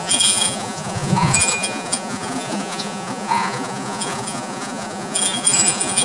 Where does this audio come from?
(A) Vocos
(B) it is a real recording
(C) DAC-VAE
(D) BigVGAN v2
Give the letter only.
A